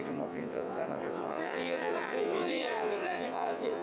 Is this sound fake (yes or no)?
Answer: yes